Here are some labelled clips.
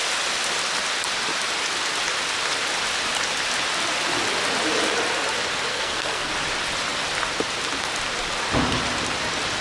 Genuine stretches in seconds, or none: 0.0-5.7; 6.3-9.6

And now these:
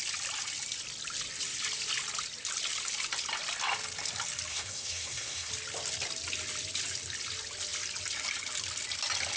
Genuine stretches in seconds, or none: 0.0-4.5; 5.5-9.4

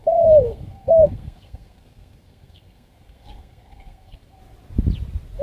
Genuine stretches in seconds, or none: 4.4-5.4

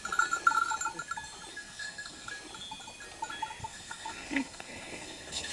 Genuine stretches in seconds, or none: 0.0-1.5; 2.3-3.6

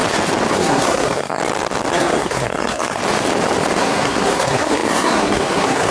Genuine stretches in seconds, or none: 0.0-0.5; 1.4-1.9; 3.0-3.8

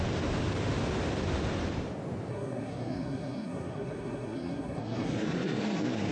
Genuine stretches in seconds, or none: 0.0-2.3